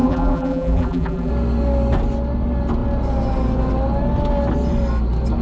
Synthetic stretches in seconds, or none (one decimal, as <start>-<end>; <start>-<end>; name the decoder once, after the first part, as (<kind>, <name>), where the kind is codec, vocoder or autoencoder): 0.0-1.3 (vocoder, BigVGAN v2)